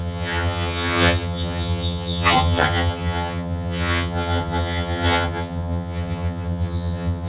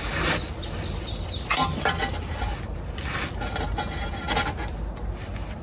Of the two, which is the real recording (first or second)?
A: second